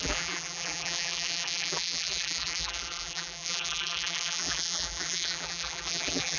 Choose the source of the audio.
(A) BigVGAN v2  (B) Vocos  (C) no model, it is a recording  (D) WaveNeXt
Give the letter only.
A